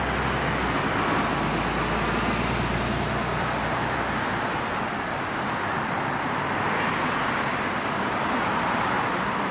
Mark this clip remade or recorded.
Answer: recorded